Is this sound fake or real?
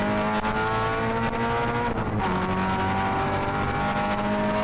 real